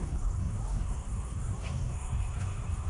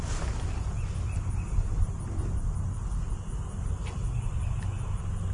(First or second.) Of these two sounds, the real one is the second